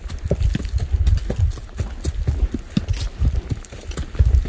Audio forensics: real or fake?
real